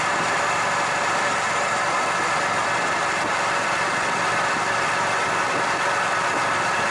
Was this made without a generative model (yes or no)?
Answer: no